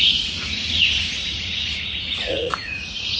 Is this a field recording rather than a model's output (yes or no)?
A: no